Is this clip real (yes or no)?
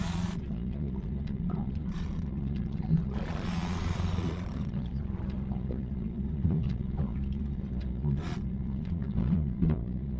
no